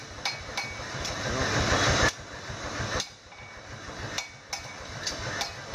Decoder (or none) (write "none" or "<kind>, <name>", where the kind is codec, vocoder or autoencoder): none